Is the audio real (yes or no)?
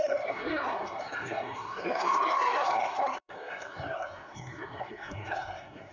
no